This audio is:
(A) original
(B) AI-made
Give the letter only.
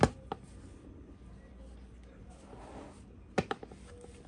A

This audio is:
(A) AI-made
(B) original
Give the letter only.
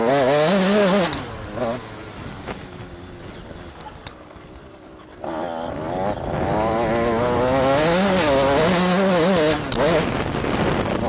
B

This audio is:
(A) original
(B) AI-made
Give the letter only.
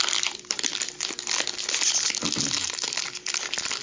A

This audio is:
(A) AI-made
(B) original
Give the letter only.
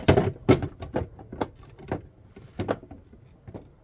B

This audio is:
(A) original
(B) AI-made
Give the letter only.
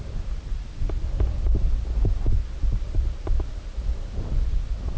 A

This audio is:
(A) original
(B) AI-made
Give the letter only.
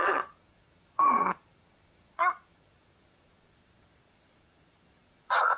B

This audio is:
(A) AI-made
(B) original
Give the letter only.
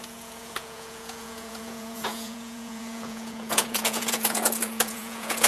A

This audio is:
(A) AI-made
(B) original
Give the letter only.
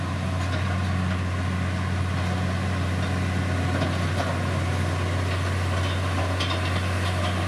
B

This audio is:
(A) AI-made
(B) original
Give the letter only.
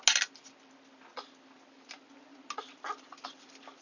B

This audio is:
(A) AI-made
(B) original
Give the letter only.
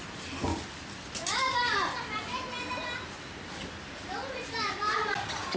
B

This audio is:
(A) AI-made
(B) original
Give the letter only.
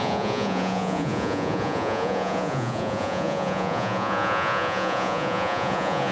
A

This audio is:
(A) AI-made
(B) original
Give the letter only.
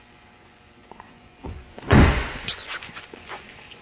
A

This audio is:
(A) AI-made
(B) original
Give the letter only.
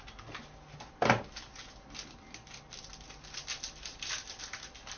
B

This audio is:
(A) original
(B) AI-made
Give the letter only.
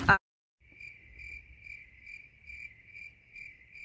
A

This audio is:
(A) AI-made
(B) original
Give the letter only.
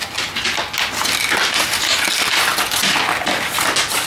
B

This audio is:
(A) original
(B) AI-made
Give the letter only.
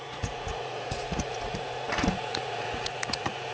B